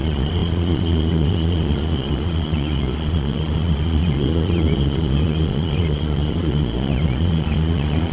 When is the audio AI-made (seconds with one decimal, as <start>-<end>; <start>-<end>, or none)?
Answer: 0.0-8.1

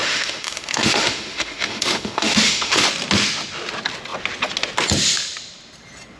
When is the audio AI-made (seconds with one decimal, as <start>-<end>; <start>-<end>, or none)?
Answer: 0.0-2.9

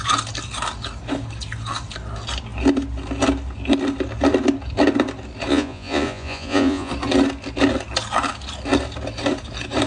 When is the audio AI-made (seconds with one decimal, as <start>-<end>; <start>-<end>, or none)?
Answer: 5.5-6.9

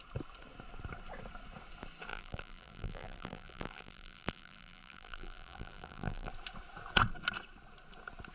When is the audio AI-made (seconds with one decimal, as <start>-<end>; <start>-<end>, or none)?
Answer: 2.1-6.3

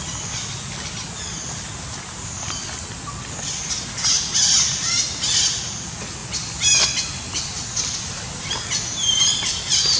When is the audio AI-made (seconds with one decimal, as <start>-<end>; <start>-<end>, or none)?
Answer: none

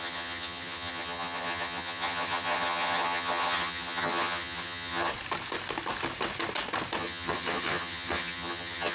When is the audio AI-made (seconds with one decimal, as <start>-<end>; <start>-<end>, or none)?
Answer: 0.0-5.1; 7.0-8.9